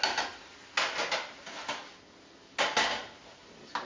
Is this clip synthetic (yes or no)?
no